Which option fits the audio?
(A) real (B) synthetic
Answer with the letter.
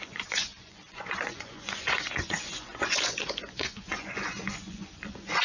B